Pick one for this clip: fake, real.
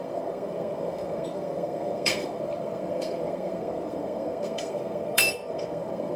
fake